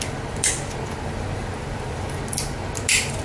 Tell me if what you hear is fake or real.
real